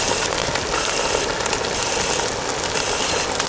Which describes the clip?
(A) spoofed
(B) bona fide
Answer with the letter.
B